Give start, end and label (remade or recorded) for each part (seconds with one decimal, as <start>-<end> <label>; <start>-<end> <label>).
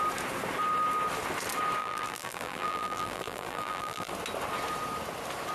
0.0-1.8 recorded; 1.8-4.1 remade; 4.1-5.5 recorded